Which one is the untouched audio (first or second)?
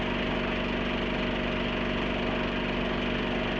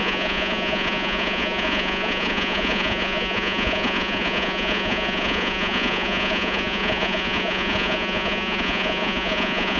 first